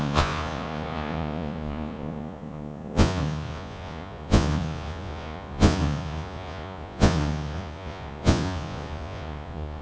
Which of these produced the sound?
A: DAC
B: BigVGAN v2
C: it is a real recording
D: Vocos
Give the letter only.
D